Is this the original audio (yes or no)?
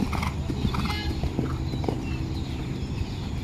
yes